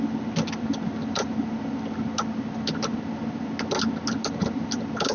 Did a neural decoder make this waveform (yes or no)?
no